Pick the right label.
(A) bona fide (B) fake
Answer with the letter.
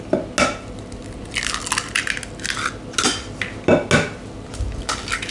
A